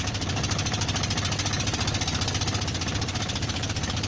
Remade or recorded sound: recorded